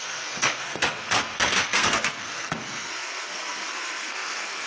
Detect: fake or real fake